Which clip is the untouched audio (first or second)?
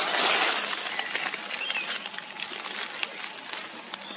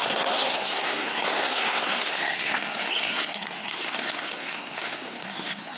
first